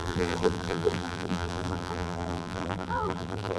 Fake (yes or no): yes